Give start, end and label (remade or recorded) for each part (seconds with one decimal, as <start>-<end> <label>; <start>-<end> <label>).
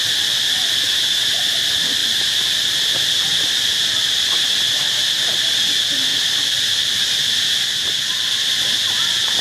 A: 0.0-9.4 recorded